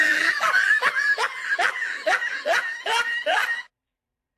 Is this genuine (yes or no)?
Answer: no